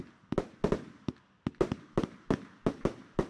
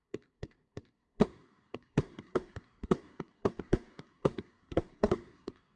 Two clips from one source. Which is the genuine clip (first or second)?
first